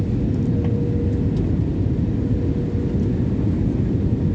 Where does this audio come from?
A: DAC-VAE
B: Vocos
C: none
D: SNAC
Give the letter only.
C